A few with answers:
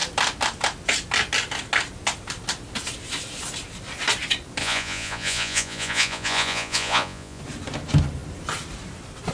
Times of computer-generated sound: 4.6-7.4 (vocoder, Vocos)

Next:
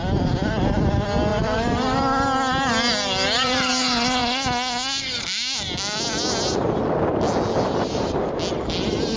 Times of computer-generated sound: 1.3-2.0 (vocoder, BigVGAN v2)

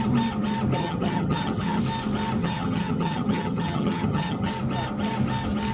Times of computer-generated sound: 0.8-1.8 (vocoder, HiFi-GAN); 2.4-4.5

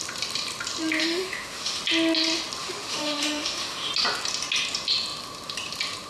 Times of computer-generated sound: 1.0-1.8 (autoencoder, DAC-VAE); 2.6-3.9